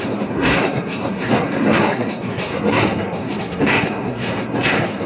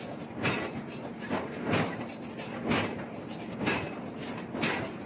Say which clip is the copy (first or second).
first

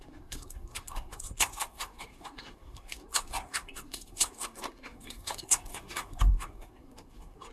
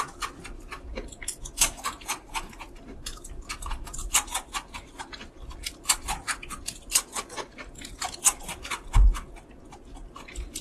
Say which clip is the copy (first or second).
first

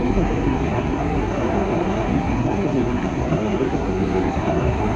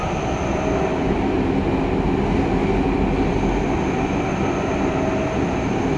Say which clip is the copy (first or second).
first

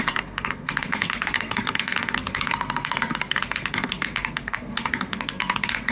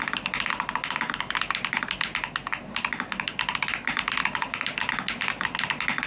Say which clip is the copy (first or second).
first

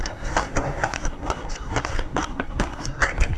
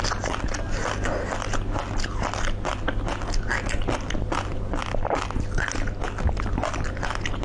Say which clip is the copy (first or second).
first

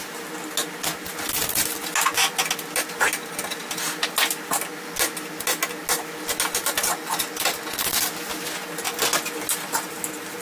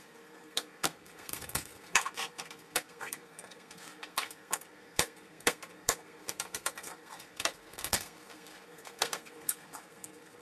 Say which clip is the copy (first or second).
second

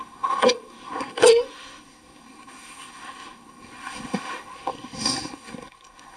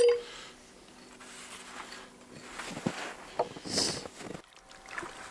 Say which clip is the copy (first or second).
first